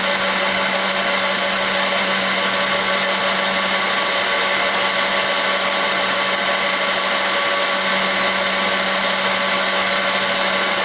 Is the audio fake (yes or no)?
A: no